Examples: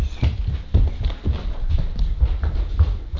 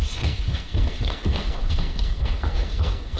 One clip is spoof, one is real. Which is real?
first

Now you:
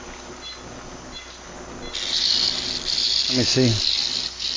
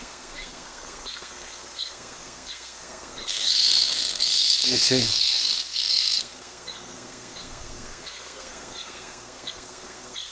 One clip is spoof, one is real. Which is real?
first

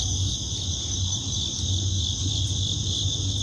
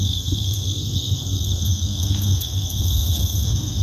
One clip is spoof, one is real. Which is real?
first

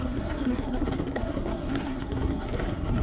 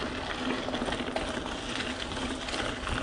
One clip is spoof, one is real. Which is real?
second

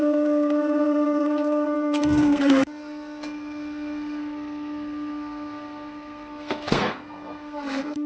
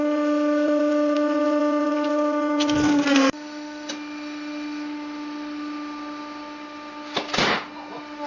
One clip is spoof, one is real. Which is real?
second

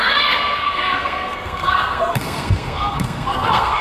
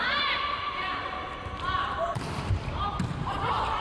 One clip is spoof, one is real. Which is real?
second